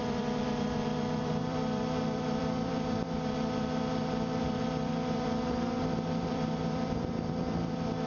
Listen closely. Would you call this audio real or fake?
fake